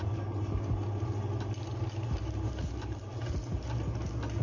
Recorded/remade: recorded